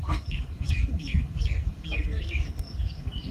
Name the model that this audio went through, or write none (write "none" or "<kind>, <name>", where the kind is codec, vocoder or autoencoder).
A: codec, SNAC